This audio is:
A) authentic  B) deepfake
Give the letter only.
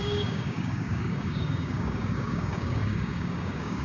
B